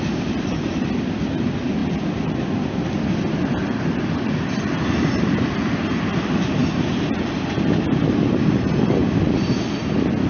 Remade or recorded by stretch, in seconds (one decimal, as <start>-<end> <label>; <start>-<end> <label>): 0.0-1.8 recorded; 1.8-5.5 remade; 5.5-9.0 recorded; 9.0-9.6 remade; 9.6-10.3 recorded

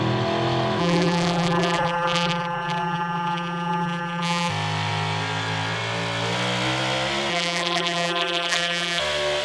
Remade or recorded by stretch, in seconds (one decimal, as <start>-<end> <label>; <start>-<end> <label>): 0.0-0.8 recorded; 0.8-4.5 remade; 4.5-7.3 recorded; 7.3-9.0 remade; 9.0-9.4 recorded

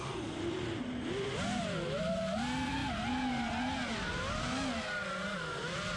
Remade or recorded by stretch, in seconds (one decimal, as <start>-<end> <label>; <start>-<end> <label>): 0.0-6.0 recorded

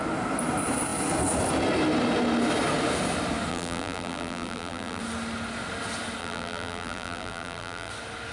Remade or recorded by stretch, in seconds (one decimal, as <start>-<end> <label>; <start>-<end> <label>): 0.0-3.5 recorded; 3.5-5.0 remade; 5.0-6.2 recorded; 6.2-7.9 remade; 7.9-8.3 recorded

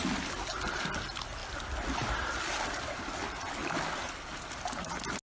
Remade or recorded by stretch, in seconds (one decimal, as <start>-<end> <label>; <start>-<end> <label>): 0.0-5.3 recorded

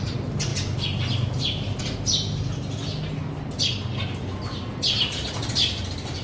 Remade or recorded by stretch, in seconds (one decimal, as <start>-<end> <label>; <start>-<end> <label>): 0.0-0.5 recorded; 0.5-1.8 remade; 1.8-6.2 recorded

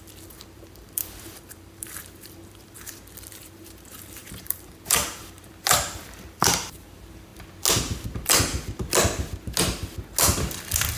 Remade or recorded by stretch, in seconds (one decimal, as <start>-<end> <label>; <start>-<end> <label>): 0.0-7.3 remade; 7.3-11.0 recorded